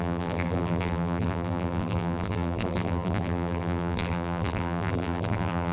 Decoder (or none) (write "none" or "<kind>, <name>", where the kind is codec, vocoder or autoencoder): vocoder, BigVGAN v2